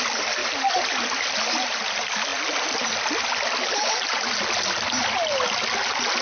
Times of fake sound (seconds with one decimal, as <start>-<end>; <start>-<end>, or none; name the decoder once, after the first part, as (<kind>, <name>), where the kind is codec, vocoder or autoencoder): none